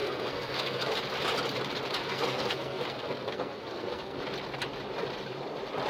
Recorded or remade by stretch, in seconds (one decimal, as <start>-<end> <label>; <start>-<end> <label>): 0.0-0.9 remade; 0.9-2.0 recorded; 2.0-4.2 remade; 4.2-5.9 recorded